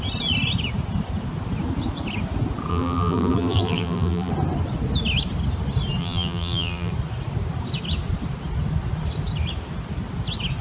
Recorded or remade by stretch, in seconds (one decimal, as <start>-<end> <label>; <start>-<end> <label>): 0.0-2.7 recorded; 2.7-4.3 remade; 4.3-6.0 recorded; 6.0-6.9 remade; 6.9-10.6 recorded